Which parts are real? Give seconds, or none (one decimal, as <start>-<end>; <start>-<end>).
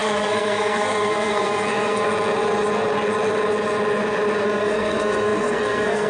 2.1-4.4